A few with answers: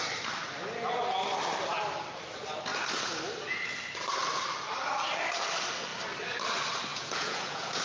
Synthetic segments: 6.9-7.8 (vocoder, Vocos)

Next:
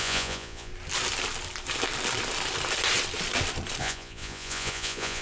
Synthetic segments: 0.0-0.7 (vocoder, Vocos); 3.8-5.2

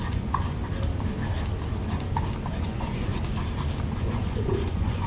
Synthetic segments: 0.0-0.6 (vocoder, Vocos); 2.5-3.1; 4.0-5.1

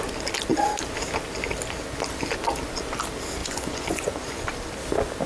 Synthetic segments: 3.4-4.5 (vocoder, Vocos)

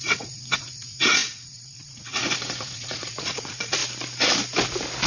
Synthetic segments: 0.0-3.8 (vocoder, Vocos)

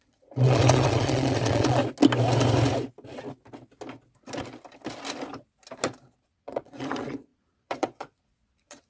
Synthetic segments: 0.0-1.8 (vocoder, Vocos); 6.2-8.9